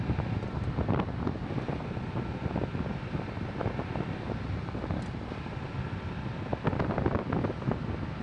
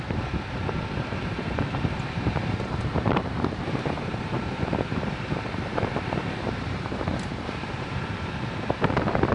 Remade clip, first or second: second